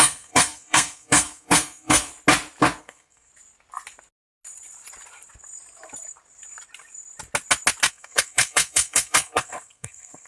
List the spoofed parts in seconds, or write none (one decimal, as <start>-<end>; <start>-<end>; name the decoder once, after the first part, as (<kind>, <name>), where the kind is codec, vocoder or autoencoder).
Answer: 0.0-2.1 (codec, SNAC); 2.8-3.3; 7.9-10.3